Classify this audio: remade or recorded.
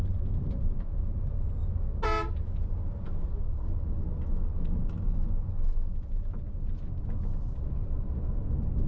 recorded